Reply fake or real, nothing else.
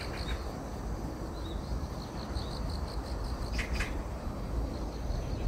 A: real